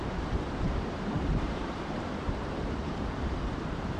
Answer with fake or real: fake